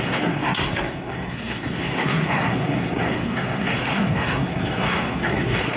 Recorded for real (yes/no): no